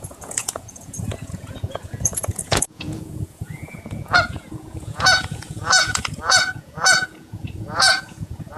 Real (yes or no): no